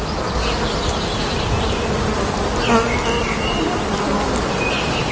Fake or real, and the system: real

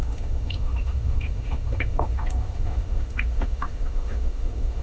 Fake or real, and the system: fake, autoencoder, DAC-VAE